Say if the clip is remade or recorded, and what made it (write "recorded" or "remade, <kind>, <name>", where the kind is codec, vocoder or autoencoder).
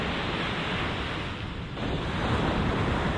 recorded